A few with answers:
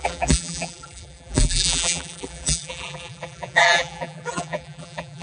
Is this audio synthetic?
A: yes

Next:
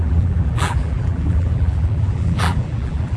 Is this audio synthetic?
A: yes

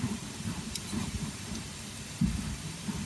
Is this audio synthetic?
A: yes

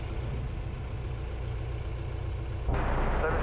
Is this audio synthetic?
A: no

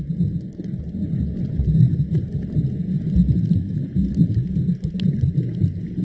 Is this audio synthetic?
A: no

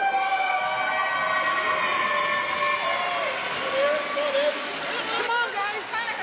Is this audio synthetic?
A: no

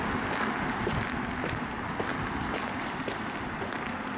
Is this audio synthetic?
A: no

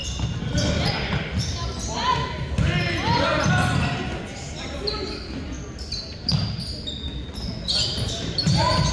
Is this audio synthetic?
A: no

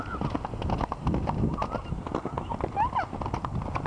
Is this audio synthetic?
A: no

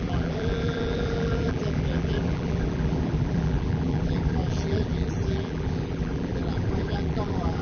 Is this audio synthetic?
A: yes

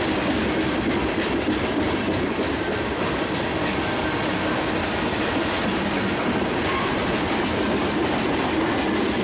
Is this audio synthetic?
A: yes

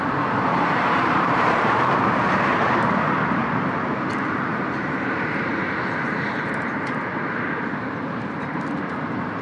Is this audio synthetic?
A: yes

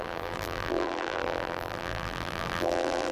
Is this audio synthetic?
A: yes